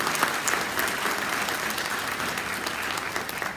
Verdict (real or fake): real